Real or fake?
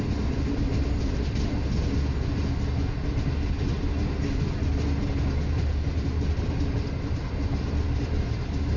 real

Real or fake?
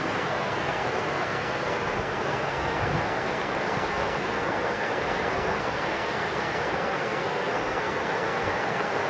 fake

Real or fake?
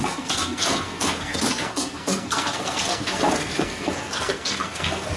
fake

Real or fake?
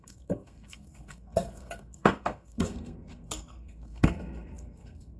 fake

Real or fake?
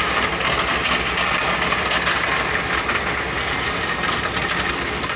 real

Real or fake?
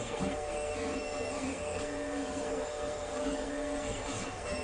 fake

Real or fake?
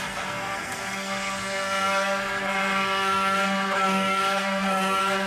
fake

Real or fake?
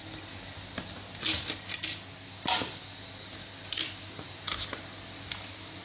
real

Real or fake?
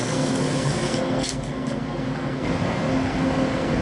fake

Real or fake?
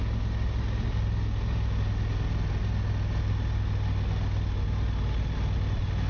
real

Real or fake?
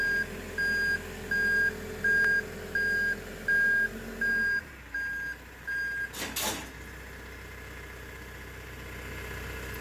real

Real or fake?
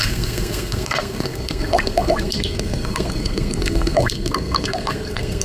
fake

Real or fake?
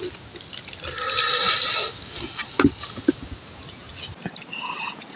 real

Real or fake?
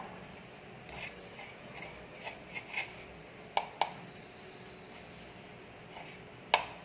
real